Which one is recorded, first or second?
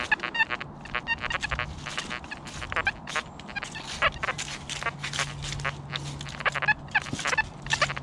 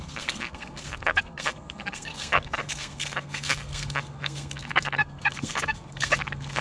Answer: first